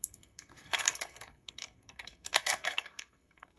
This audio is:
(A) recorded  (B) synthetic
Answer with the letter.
B